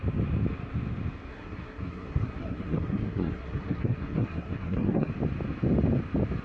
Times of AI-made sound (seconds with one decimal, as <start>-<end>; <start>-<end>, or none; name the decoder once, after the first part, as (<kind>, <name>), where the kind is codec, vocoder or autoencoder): 1.3-5.1 (codec, SNAC)